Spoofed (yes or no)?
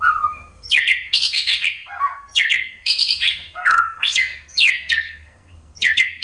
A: yes